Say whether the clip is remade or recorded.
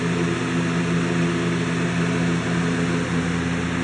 recorded